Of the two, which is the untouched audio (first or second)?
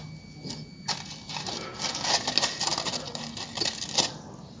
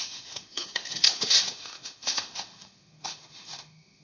first